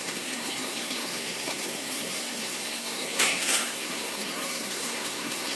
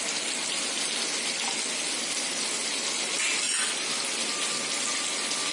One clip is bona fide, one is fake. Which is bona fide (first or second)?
second